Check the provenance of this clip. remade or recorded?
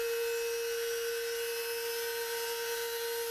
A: recorded